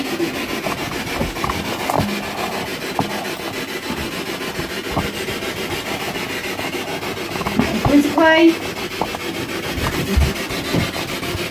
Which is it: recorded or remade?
recorded